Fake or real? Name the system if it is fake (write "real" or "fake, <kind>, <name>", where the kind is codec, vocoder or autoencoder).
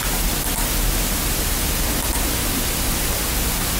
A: real